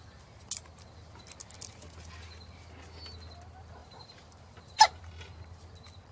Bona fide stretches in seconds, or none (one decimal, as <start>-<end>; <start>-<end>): 0.0-3.8; 5.0-6.1